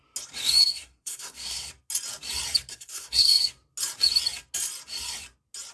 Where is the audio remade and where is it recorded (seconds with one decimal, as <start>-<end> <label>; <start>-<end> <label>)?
0.0-0.6 recorded; 0.6-1.7 remade; 1.7-2.7 recorded; 2.7-3.5 remade; 3.5-5.7 recorded